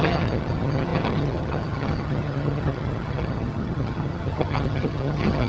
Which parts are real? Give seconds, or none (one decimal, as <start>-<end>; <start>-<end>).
none